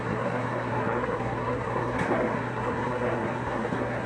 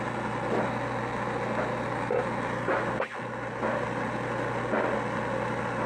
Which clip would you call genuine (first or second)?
second